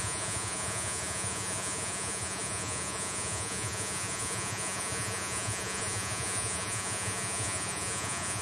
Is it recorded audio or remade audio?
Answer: remade